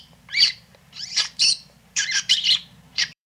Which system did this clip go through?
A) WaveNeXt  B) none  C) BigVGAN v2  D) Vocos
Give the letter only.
C